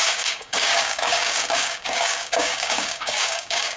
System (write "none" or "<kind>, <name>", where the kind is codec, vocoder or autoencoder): codec, DAC